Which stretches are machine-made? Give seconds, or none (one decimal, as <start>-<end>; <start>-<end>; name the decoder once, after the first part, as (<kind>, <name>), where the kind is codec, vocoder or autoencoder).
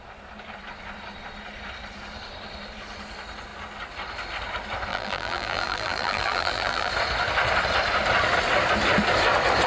4.9-6.9 (vocoder, BigVGAN v2)